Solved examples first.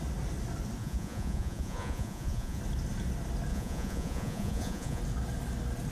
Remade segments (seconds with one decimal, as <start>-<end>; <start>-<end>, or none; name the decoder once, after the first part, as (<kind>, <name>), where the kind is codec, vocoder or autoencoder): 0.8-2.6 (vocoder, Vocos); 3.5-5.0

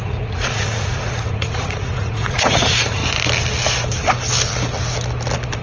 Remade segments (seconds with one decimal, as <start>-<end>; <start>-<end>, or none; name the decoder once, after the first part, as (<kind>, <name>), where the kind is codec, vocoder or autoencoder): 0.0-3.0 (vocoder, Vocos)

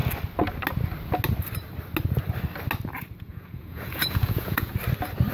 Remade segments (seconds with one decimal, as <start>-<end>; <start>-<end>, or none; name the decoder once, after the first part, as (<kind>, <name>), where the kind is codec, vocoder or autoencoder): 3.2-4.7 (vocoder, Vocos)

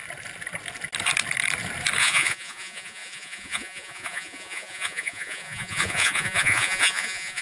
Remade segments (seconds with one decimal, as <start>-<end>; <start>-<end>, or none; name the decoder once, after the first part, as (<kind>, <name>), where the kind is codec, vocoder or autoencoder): 2.0-7.4 (vocoder, Vocos)

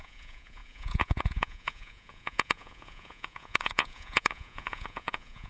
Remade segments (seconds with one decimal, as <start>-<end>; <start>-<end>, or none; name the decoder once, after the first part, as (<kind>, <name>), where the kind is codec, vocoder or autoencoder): 0.0-5.5 (vocoder, Vocos)

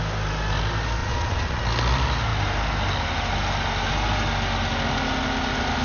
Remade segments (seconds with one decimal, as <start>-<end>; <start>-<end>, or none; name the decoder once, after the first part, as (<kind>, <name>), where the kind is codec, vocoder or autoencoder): 1.0-1.6 (vocoder, Vocos)

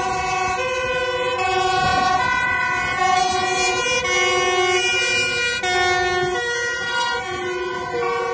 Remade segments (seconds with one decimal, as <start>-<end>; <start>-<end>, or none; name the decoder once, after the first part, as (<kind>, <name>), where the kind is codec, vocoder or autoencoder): none